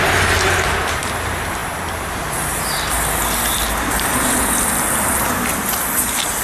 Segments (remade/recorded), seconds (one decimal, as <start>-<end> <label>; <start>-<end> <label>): 0.0-6.4 recorded